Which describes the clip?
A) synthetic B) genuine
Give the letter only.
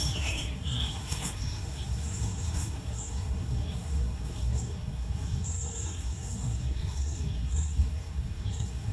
A